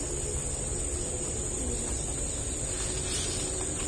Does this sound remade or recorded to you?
recorded